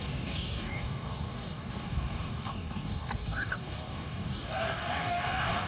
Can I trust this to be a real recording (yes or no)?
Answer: no